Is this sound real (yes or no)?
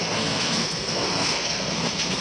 no